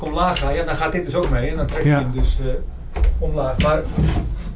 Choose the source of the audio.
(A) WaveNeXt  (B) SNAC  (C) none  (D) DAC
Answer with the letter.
C